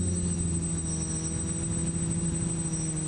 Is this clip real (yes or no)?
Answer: yes